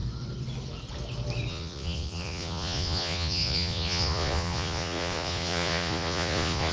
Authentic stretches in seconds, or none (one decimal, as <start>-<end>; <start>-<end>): 0.0-1.5